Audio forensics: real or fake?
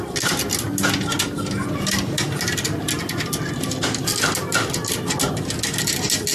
real